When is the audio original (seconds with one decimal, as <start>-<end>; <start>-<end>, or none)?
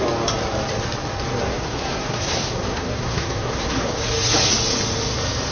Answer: 0.0-1.5; 3.9-5.5